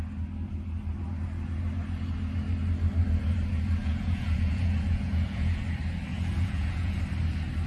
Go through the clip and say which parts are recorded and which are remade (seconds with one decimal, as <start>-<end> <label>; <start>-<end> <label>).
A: 0.0-3.8 recorded; 3.8-5.6 remade; 5.6-6.1 recorded; 6.1-7.0 remade; 7.0-7.7 recorded